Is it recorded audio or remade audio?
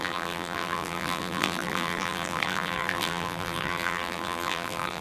remade